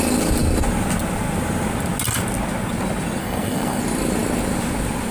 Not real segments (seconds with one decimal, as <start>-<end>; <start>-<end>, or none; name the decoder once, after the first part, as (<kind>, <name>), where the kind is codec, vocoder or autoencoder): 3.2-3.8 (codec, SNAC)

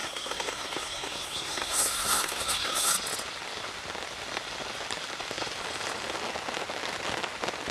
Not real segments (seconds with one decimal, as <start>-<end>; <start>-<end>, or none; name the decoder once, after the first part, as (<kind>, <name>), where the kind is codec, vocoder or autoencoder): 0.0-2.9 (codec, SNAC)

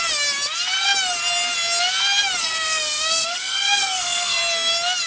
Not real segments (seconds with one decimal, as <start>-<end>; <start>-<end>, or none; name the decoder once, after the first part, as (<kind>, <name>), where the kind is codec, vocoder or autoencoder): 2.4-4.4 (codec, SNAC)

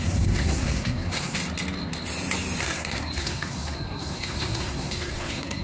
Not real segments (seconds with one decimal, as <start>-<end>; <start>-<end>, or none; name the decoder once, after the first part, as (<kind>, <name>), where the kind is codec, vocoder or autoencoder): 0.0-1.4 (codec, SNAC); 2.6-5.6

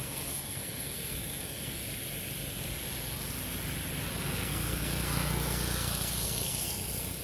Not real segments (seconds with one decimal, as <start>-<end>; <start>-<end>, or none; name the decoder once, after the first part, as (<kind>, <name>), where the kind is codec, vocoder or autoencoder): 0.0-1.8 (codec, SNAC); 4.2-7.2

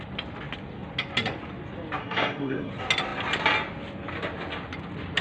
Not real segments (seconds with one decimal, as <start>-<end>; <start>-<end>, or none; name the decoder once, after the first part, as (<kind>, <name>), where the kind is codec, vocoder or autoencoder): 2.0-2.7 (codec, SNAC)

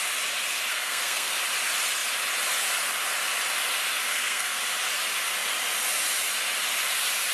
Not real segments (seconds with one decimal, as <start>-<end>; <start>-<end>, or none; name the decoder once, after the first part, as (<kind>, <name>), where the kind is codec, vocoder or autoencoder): 0.7-1.3 (codec, SNAC); 4.1-4.6

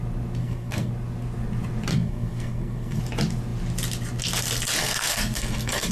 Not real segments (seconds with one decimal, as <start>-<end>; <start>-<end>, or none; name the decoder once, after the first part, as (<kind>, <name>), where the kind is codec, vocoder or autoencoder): 0.4-0.9 (codec, SNAC); 1.9-3.0; 4.8-5.9